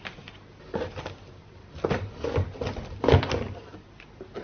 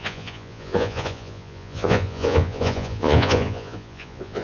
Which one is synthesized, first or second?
second